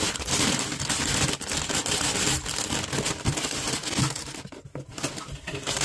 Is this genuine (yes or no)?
yes